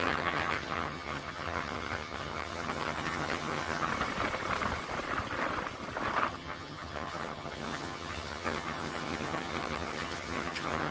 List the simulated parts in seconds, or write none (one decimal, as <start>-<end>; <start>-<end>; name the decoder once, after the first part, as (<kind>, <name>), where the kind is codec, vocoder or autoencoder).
0.0-3.9 (vocoder, HiFi-GAN); 6.3-10.9